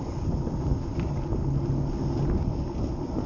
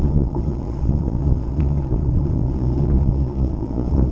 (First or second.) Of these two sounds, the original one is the first